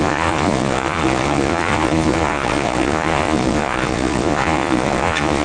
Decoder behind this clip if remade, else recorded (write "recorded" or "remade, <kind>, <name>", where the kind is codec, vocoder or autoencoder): remade, vocoder, Vocos